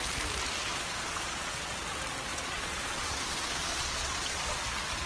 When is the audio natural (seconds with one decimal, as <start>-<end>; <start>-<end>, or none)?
0.0-0.7; 1.7-2.3; 4.6-5.1